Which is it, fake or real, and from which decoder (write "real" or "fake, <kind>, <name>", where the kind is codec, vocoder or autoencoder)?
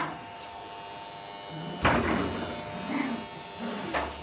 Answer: real